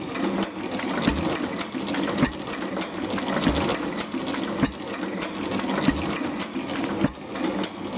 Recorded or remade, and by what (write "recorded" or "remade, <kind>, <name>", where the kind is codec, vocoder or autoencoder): recorded